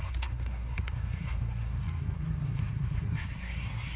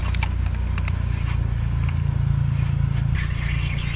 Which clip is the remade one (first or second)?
first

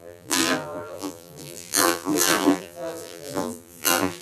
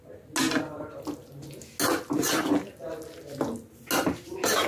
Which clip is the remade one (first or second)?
first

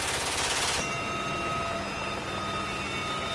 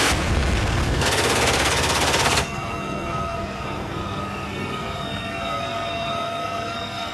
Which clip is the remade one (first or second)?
second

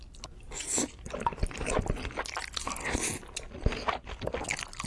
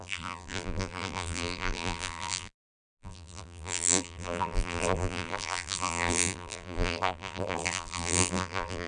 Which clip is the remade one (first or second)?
second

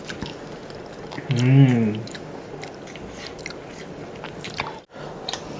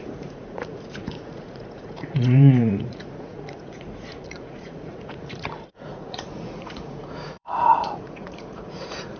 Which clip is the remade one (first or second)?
second